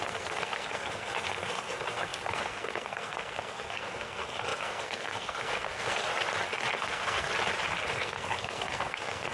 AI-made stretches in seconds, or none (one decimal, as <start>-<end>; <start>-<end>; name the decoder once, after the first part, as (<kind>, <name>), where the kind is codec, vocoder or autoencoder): 0.0-6.1 (codec, SNAC); 6.8-7.3; 7.9-9.3

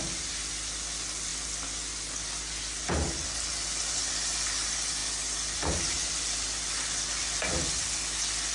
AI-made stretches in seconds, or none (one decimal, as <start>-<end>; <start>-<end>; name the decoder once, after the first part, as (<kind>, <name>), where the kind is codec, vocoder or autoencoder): none

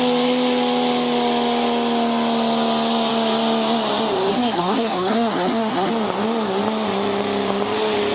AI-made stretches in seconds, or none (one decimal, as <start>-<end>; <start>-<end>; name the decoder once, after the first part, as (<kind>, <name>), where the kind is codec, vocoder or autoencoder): 4.3-5.9 (codec, SNAC)

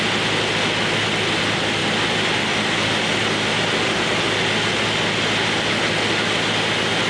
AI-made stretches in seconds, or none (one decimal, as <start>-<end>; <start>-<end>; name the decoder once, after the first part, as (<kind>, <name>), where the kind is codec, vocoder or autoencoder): none